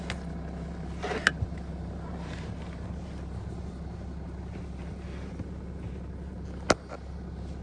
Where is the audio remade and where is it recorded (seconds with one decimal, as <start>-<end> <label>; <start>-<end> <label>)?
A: 0.0-7.6 recorded